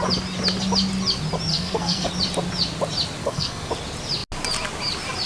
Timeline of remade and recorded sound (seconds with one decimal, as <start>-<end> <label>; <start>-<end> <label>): 0.0-1.5 recorded; 1.5-2.1 remade; 2.1-3.2 recorded; 3.2-3.7 remade; 3.7-5.3 recorded